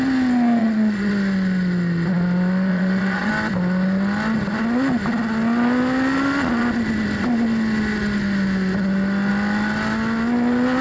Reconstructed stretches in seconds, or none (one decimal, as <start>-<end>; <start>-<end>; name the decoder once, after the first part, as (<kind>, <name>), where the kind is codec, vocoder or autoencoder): 0.6-1.1 (vocoder, Vocos); 2.7-3.3